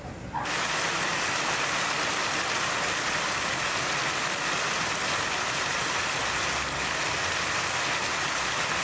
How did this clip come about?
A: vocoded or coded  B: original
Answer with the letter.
B